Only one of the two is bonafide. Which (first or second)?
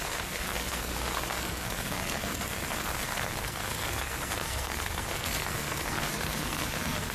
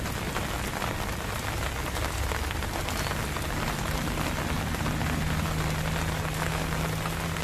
second